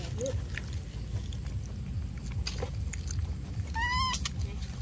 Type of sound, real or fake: real